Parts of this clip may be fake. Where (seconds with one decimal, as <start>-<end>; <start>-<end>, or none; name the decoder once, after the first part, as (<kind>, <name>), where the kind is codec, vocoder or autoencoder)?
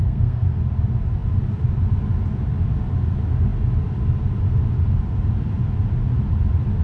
0.0-0.6 (codec, SNAC)